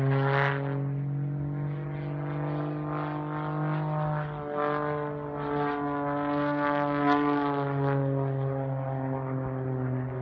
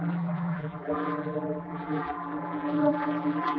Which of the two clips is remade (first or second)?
second